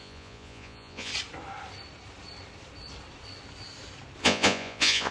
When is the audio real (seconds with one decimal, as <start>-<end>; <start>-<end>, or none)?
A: 1.1-4.2